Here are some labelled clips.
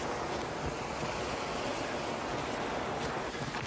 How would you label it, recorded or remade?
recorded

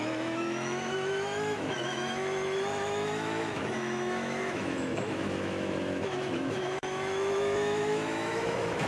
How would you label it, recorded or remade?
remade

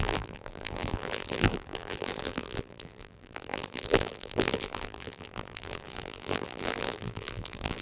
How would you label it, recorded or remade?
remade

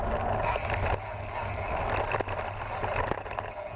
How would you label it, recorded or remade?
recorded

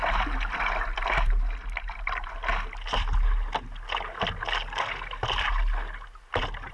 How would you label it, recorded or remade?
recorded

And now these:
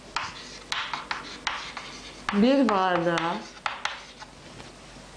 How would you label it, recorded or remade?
recorded